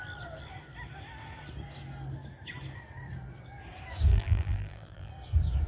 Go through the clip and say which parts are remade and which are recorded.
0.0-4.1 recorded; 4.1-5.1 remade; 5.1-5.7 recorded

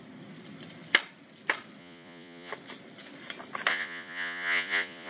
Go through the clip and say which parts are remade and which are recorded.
0.0-1.8 recorded; 1.8-2.5 remade; 2.5-3.7 recorded; 3.7-5.1 remade

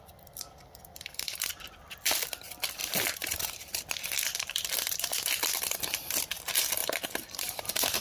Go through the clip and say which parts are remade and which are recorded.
0.0-8.0 remade

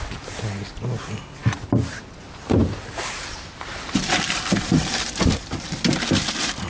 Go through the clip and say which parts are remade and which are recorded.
0.0-2.6 recorded; 2.6-5.6 remade; 5.6-6.7 recorded

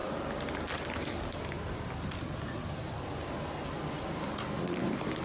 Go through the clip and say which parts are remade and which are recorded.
0.0-5.2 recorded

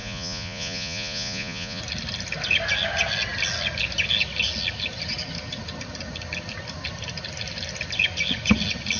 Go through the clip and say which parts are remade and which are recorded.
0.0-1.8 remade; 1.8-9.0 recorded

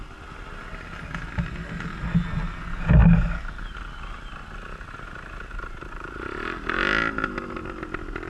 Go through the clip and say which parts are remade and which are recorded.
0.0-7.6 recorded; 7.6-8.3 remade